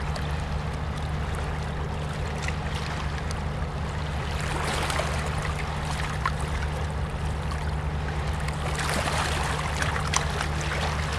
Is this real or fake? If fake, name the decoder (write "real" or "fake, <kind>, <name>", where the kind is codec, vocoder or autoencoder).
real